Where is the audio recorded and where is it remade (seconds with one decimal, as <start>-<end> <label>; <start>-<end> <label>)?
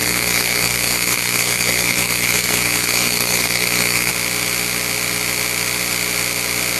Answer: 0.0-4.1 remade; 4.1-6.8 recorded